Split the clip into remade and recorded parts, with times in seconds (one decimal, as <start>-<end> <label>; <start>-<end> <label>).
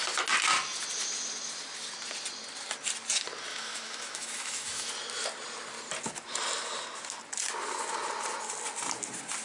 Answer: 0.0-3.5 recorded; 3.5-4.9 remade; 4.9-9.4 recorded